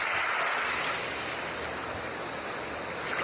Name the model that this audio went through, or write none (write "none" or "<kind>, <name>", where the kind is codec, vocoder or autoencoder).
none